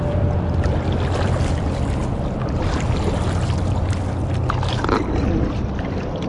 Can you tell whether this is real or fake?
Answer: real